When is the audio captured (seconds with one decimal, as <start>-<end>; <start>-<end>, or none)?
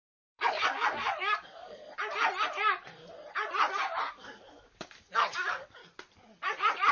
1.8-4.1; 5.8-6.9